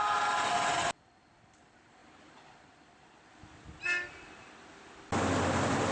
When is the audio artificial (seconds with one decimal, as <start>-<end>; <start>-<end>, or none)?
none

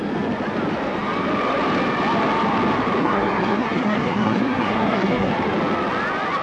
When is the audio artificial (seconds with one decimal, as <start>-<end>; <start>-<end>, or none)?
3.0-5.3

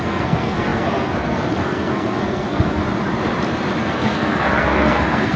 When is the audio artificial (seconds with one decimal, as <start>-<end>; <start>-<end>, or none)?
0.0-2.8; 3.8-5.4

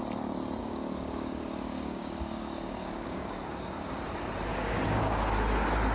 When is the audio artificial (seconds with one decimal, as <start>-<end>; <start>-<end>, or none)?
0.6-3.9; 4.5-5.2

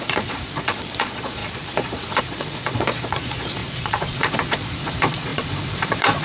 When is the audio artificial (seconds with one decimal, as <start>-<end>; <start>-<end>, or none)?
0.0-6.2

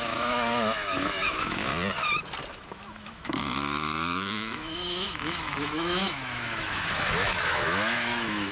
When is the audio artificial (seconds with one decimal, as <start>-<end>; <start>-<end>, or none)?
0.0-1.7; 2.5-8.5

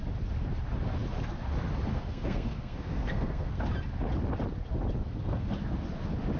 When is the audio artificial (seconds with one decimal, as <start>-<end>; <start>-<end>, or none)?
1.9-3.6; 5.0-5.5